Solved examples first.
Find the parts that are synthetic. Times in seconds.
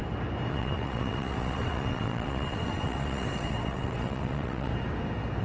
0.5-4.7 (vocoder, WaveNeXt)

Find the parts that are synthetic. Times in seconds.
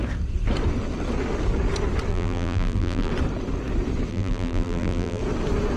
2.1-3.1 (vocoder, BigVGAN v2); 4.1-5.2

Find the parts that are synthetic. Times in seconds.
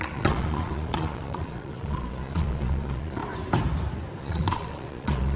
0.0-3.2 (vocoder, Vocos); 4.2-5.4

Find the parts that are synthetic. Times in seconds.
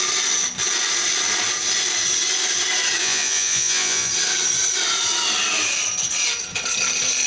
3.0-4.1 (vocoder, Vocos)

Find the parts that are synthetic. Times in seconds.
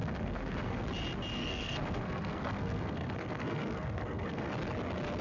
0.0-0.8 (codec, SNAC); 1.4-4.5